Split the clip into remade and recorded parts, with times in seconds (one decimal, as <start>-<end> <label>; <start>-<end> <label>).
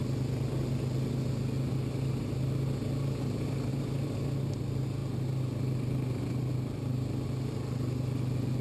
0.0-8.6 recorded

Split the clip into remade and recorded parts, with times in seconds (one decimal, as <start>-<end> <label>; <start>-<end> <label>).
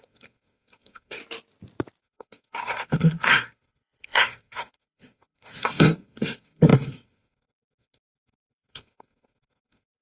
0.0-1.2 remade; 1.2-2.0 recorded; 2.0-10.0 remade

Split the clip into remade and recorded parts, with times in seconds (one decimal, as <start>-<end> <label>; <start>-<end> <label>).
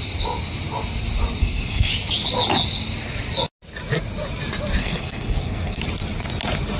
0.0-1.4 recorded; 1.4-1.9 remade; 1.9-4.8 recorded; 4.8-5.8 remade; 5.8-6.8 recorded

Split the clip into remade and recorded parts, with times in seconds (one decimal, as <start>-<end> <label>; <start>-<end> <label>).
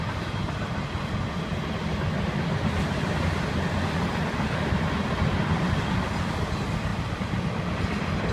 0.0-6.9 recorded; 6.9-8.3 remade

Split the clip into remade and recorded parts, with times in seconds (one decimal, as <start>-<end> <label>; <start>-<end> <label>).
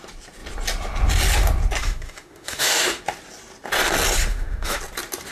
0.0-1.8 recorded; 1.8-3.0 remade; 3.0-4.3 recorded; 4.3-4.8 remade; 4.8-5.3 recorded